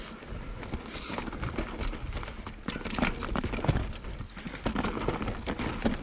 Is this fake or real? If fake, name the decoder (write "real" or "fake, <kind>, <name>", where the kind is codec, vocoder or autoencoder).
real